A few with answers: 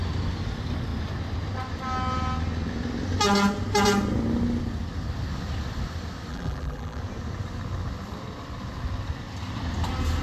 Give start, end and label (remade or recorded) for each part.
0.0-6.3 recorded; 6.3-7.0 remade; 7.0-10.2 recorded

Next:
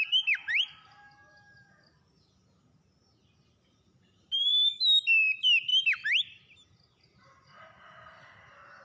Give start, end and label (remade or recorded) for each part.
0.0-4.5 recorded; 4.5-5.0 remade; 5.0-8.8 recorded

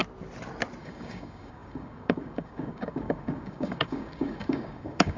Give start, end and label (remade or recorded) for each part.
0.0-0.8 recorded; 0.8-5.2 remade

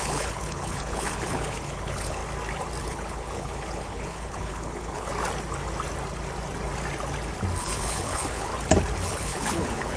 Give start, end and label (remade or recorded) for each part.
0.0-2.2 remade; 2.2-2.8 recorded; 2.8-5.1 remade; 5.1-7.6 recorded; 7.6-8.5 remade; 8.5-9.1 recorded; 9.1-10.0 remade